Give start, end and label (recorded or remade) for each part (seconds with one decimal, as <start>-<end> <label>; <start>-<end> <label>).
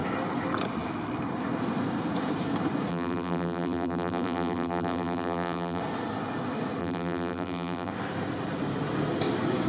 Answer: 0.0-2.9 recorded; 2.9-5.8 remade; 5.8-6.8 recorded; 6.8-7.9 remade; 7.9-9.7 recorded